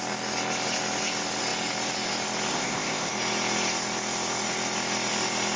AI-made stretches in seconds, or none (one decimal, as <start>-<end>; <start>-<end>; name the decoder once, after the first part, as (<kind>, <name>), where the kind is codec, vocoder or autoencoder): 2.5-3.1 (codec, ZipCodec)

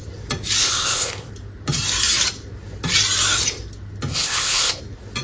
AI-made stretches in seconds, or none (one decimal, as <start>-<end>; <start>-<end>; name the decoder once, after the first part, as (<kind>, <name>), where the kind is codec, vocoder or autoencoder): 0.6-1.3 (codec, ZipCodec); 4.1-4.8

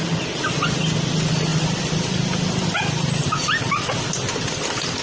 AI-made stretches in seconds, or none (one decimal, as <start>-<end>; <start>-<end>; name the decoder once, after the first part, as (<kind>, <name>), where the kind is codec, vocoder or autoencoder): none

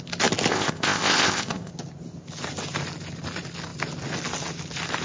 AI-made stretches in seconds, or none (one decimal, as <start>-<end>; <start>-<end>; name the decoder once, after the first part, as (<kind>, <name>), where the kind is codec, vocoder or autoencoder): 0.5-1.7 (codec, ZipCodec)

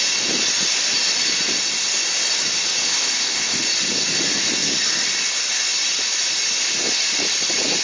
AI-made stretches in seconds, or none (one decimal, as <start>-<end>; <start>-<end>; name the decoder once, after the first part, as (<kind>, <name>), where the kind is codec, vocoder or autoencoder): 2.8-3.6 (codec, ZipCodec)

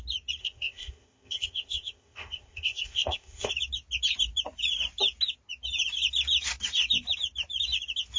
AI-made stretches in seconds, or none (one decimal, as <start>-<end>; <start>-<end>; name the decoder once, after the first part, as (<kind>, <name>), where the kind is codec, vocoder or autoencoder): 0.4-3.5 (codec, ZipCodec)

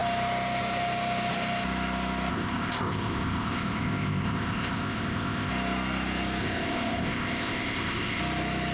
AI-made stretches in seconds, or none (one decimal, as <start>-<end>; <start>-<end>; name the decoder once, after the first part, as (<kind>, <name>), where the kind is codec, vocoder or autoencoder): 2.3-5.5 (codec, ZipCodec); 6.4-8.2

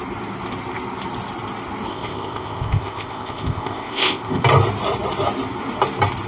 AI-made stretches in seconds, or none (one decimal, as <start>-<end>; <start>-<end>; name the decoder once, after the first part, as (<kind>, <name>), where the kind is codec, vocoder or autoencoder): 1.9-4.4 (codec, ZipCodec)